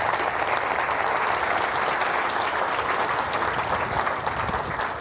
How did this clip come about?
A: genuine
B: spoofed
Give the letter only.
A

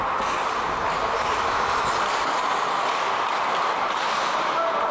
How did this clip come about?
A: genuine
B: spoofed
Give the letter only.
A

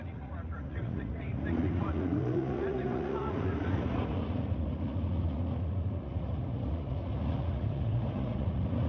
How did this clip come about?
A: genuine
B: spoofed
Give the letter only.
B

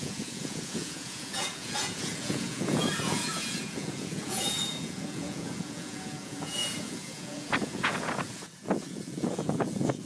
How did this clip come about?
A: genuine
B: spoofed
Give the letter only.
B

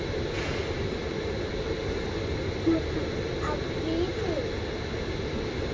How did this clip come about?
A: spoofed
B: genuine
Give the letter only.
B